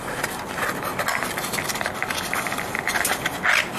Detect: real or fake real